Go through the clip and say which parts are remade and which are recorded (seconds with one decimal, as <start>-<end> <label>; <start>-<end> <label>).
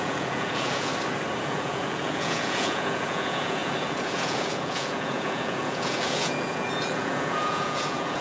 0.0-0.9 remade; 0.9-1.4 recorded; 1.4-8.2 remade